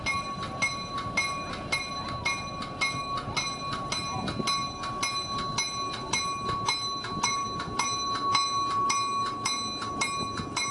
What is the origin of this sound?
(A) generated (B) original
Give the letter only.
B